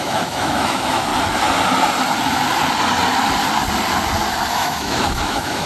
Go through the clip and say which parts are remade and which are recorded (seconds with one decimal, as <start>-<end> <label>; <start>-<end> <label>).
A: 0.0-1.1 remade; 1.1-4.5 recorded; 4.5-5.7 remade